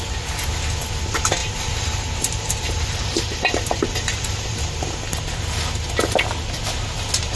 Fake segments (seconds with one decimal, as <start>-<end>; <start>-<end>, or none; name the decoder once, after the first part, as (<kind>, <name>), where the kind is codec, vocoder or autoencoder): 1.4-4.6 (vocoder, BigVGAN v2)